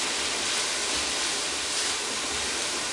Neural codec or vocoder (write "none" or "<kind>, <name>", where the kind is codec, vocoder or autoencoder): none